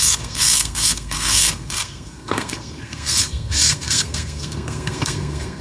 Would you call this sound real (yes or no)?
no